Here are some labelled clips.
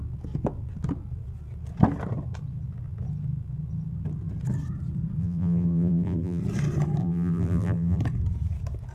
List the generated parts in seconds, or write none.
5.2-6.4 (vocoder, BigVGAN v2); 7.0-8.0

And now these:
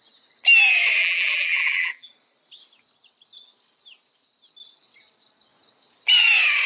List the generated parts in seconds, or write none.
1.0-2.1 (vocoder, BigVGAN v2)

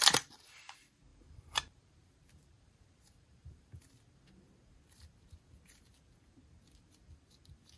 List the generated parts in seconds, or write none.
1.1-3.7 (vocoder, BigVGAN v2)

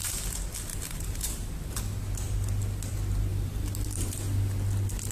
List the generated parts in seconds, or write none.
0.7-1.5 (vocoder, BigVGAN v2); 3.3-4.1

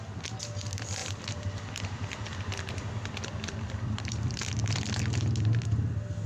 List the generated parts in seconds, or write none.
1.0-4.8 (vocoder, BigVGAN v2)

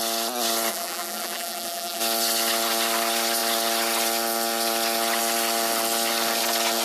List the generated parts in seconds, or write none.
0.7-2.0 (vocoder, BigVGAN v2)